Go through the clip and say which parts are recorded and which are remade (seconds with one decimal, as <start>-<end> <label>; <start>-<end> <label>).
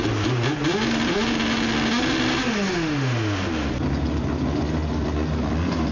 0.0-5.9 recorded